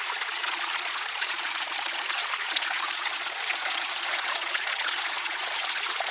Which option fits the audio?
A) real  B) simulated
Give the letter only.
B